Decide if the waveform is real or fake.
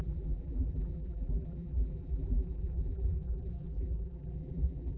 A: fake